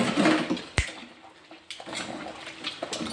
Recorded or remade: recorded